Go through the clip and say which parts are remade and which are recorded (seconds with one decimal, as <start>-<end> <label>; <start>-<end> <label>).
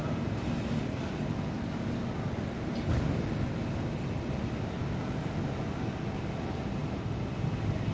0.0-7.9 recorded